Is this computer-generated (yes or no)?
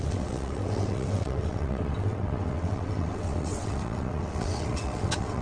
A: yes